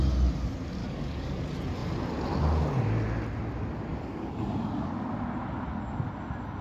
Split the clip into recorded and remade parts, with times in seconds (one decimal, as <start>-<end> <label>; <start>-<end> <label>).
0.0-0.8 recorded; 0.8-1.4 remade; 1.4-3.9 recorded; 3.9-4.9 remade; 4.9-6.6 recorded